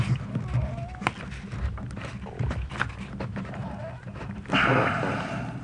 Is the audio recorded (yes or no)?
yes